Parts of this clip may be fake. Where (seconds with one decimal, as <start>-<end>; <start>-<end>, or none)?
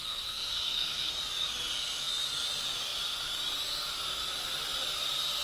0.0-1.1